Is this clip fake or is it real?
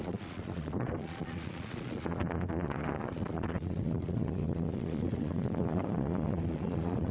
fake